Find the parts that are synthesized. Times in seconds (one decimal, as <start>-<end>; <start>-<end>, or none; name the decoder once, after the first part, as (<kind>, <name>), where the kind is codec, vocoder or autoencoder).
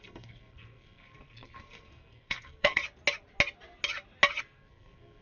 0.0-2.8 (codec, SNAC); 4.4-5.2